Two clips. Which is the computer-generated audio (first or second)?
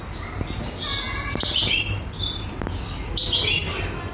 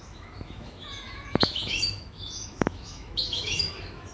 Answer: second